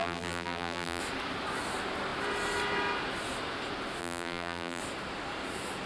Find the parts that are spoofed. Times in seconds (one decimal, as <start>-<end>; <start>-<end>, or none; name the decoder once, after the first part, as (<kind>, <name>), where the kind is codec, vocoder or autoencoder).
0.0-1.0 (vocoder, BigVGAN v2); 4.0-4.8